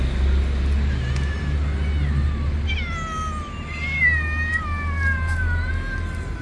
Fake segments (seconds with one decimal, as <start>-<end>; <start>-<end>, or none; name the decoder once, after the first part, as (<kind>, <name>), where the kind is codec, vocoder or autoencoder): none